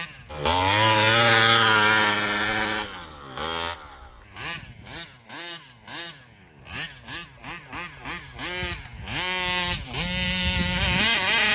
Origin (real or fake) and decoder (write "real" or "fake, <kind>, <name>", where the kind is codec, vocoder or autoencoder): real